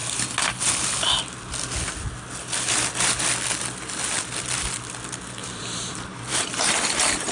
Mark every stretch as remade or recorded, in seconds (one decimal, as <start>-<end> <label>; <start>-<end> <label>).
0.0-5.4 recorded; 5.4-6.6 remade; 6.6-7.3 recorded